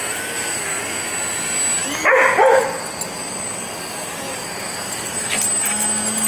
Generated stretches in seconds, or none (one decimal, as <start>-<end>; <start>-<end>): 4.3-5.3